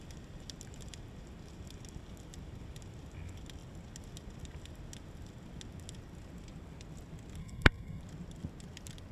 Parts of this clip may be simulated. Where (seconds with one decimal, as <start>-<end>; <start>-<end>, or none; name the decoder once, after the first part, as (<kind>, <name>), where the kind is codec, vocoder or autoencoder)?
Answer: 7.4-8.0 (codec, SNAC)